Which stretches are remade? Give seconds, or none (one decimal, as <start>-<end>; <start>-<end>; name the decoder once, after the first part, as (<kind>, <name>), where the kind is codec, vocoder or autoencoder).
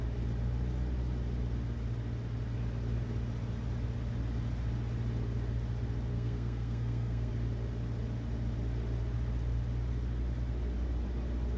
6.1-7.3 (codec, SNAC)